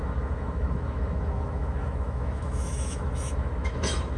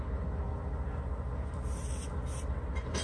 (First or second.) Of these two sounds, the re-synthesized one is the first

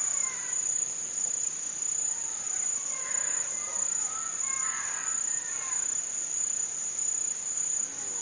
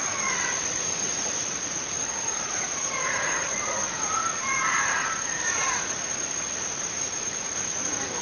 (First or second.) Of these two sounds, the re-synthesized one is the second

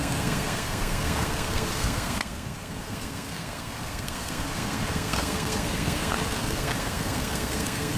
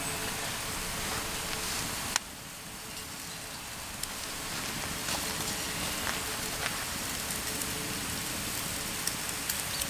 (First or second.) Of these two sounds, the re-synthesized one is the first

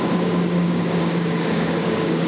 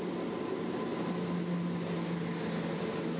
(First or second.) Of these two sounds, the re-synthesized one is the first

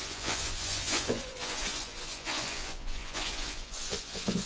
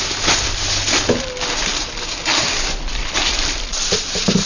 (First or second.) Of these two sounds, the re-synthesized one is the first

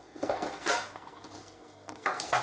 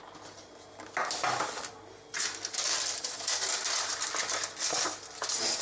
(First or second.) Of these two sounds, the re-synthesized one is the first